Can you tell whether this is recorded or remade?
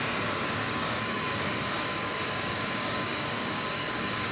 remade